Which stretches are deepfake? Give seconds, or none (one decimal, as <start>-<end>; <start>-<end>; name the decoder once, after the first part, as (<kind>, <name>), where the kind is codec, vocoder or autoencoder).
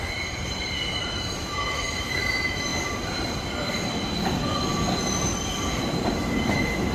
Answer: 1.0-2.2 (autoencoder, DAC-VAE)